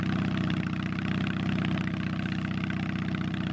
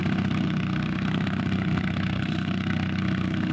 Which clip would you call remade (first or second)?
second